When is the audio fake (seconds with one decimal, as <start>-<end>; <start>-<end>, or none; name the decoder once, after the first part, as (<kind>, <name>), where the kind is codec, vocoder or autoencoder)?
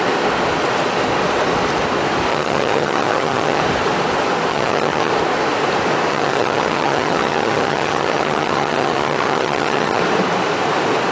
2.3-3.6 (vocoder, HiFi-GAN); 4.5-5.1; 6.1-10.0